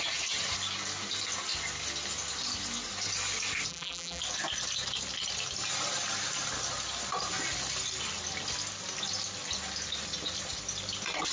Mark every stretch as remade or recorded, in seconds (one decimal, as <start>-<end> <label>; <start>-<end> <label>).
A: 0.0-3.7 recorded; 3.7-4.2 remade; 4.2-11.3 recorded